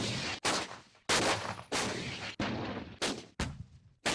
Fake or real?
real